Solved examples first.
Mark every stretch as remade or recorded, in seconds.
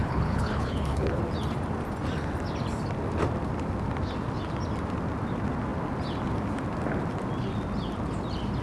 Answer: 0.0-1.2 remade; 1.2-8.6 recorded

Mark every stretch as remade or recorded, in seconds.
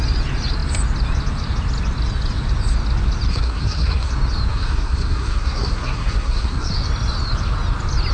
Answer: 0.0-3.3 recorded; 3.3-4.1 remade; 4.1-4.5 recorded; 4.5-6.7 remade; 6.7-8.1 recorded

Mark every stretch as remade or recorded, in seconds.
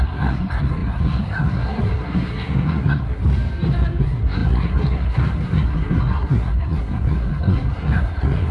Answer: 0.0-3.2 remade; 3.2-4.0 recorded; 4.0-8.5 remade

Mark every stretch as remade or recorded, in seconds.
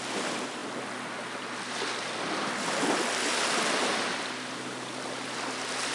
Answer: 0.0-5.9 recorded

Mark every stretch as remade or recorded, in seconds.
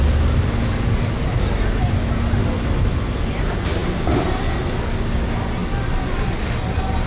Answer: 0.0-7.1 recorded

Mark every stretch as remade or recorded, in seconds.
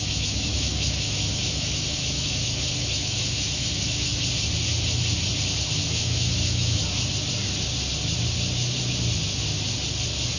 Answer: 0.0-4.1 remade; 4.1-5.8 recorded; 5.8-6.8 remade; 6.8-10.4 recorded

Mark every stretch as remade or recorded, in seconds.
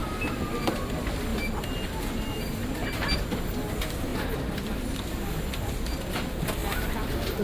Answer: 0.0-7.4 recorded